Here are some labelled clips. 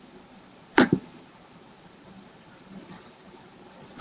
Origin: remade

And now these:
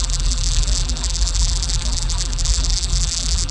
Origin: remade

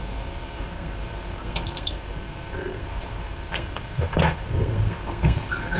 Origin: remade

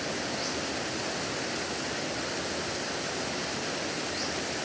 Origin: recorded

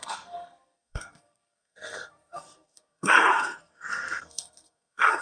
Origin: remade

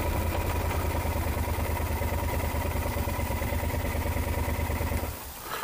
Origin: remade